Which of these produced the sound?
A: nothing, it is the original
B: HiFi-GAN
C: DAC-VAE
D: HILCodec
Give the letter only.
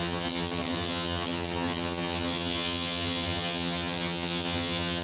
B